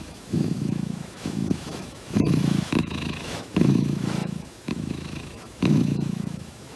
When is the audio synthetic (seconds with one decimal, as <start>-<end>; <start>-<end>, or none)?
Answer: 0.0-6.8